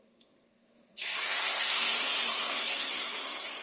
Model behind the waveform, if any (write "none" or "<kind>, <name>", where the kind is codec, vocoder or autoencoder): codec, SNAC